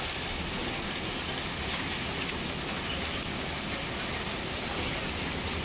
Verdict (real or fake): real